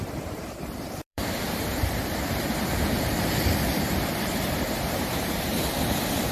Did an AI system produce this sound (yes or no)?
yes